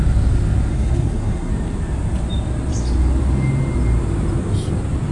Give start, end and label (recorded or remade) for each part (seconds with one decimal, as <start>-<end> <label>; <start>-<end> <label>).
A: 0.0-0.7 recorded; 0.7-1.5 remade; 1.5-5.1 recorded